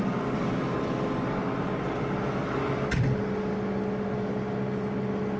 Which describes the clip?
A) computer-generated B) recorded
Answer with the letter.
B